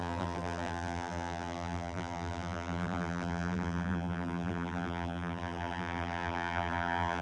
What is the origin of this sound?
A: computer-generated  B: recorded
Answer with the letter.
A